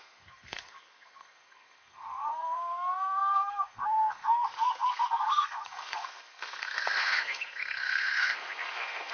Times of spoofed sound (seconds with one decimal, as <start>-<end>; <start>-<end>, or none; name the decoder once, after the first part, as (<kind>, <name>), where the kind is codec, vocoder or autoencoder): 0.0-9.1 (codec, SNAC)

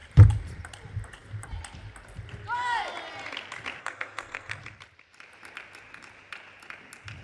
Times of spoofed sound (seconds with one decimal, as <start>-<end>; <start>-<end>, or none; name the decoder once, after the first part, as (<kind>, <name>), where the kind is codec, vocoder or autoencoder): 3.8-4.6 (codec, SNAC)

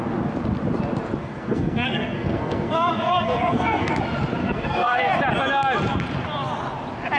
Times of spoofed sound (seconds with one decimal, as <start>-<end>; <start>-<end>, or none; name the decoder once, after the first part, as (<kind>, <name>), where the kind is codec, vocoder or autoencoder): 1.2-3.9 (codec, SNAC); 4.4-5.0

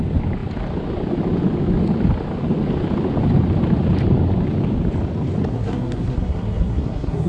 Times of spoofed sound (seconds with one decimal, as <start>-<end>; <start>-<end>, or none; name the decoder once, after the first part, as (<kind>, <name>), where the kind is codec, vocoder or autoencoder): 5.5-7.3 (codec, SNAC)

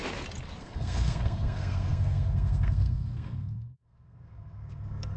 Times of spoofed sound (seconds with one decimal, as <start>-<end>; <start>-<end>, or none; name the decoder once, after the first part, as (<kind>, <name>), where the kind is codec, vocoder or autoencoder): 0.6-5.2 (codec, SNAC)